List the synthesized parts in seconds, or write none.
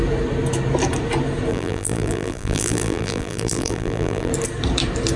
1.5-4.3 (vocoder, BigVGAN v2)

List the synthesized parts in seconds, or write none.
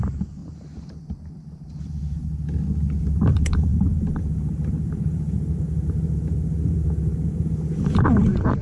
0.0-2.3 (vocoder, BigVGAN v2); 3.0-8.6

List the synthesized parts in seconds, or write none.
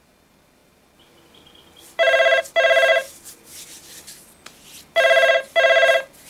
0.6-2.4 (vocoder, BigVGAN v2); 2.9-3.5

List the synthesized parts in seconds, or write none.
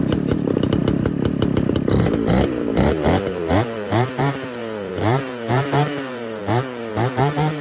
0.0-7.6 (vocoder, BigVGAN v2)